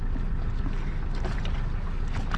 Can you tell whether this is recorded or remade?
recorded